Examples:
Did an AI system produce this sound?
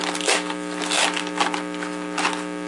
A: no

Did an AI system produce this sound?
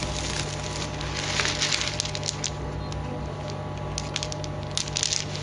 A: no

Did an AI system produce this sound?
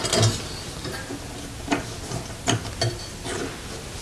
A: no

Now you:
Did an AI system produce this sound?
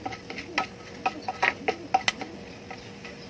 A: no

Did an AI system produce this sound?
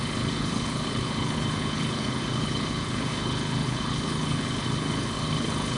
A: yes